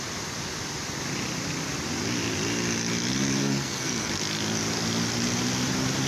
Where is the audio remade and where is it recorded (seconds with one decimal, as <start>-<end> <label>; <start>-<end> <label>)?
0.0-3.4 recorded; 3.4-4.1 remade; 4.1-6.1 recorded